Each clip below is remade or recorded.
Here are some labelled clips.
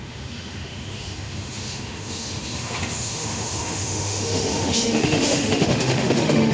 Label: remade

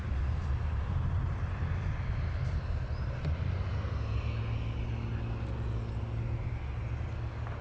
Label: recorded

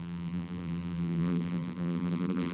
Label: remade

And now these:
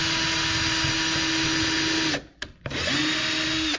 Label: recorded